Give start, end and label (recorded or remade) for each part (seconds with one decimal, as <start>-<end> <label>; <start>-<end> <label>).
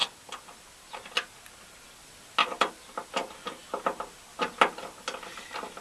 0.0-2.4 recorded; 2.4-2.9 remade; 2.9-5.8 recorded